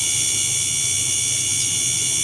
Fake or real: fake